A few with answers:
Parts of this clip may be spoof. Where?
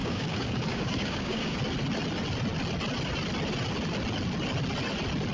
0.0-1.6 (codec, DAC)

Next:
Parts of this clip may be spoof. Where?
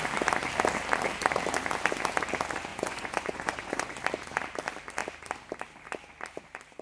2.7-3.9 (vocoder, Vocos)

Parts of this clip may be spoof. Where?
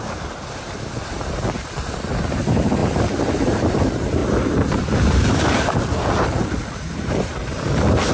0.0-8.1 (vocoder, BigVGAN v2)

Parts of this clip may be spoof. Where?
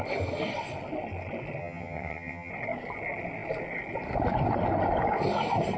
1.6-2.5 (vocoder, HiFi-GAN)